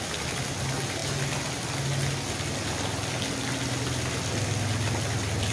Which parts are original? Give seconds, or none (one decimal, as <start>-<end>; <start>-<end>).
0.0-5.5